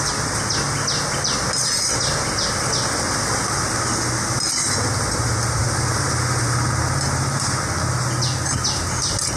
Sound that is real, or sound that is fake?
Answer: real